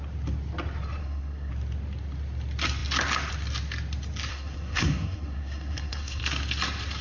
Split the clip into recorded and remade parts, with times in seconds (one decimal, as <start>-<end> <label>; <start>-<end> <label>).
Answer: 0.0-1.0 recorded; 1.0-1.5 remade; 1.5-4.3 recorded; 4.3-6.2 remade; 6.2-7.0 recorded